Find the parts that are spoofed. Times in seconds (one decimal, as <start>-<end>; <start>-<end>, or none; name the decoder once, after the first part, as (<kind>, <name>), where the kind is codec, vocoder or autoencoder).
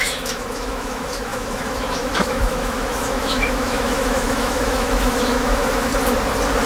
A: 0.0-5.9 (autoencoder, DAC-VAE)